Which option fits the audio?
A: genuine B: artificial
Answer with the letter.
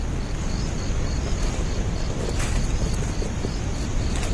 A